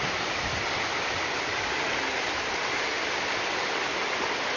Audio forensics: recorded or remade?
recorded